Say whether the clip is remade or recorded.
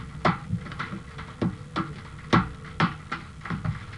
recorded